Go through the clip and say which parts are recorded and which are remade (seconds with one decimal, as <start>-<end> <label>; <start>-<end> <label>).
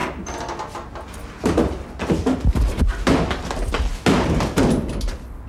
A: 0.0-5.5 recorded